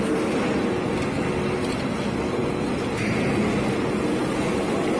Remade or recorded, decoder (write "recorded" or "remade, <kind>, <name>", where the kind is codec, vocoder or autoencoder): recorded